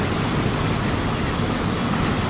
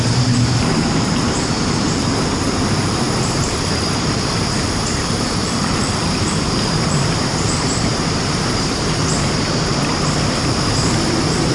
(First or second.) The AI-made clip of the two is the second